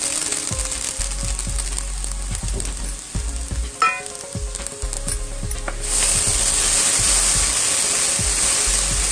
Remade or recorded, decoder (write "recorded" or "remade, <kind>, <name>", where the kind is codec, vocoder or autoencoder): recorded